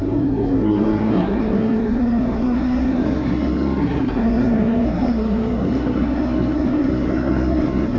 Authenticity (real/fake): fake